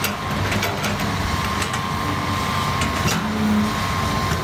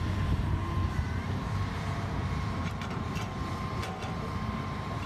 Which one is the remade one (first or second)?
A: second